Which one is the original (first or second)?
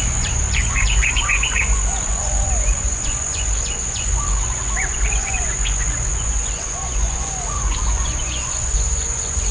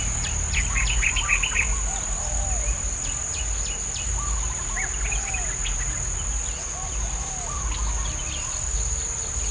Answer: second